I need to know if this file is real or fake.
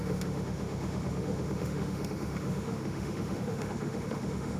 fake